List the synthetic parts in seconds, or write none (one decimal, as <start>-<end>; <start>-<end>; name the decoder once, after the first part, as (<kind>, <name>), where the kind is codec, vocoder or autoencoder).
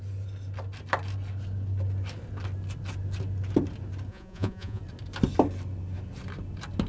4.1-4.8 (vocoder, Vocos)